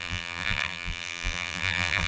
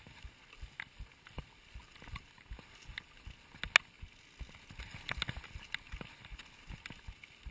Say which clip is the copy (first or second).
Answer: first